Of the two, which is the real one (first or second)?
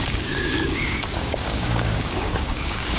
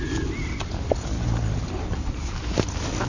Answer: second